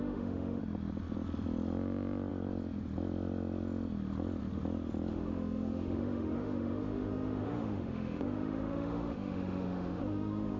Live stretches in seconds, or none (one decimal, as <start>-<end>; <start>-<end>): 0.6-5.1